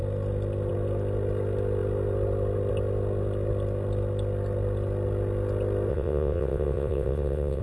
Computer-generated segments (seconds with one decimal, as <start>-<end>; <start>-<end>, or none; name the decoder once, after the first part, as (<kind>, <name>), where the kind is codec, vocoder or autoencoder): 5.9-7.6 (vocoder, WaveNeXt)